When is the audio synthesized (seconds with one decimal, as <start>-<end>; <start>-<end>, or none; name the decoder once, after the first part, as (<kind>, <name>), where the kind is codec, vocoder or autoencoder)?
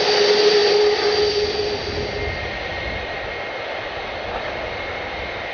none